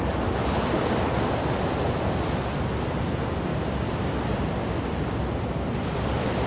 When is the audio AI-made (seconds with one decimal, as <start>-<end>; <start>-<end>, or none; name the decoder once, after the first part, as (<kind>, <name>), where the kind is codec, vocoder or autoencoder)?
none